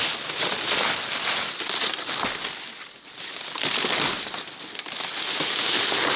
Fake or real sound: real